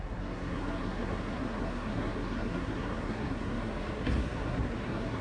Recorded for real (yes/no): no